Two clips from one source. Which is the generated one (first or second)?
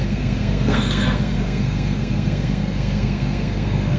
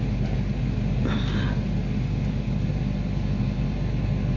first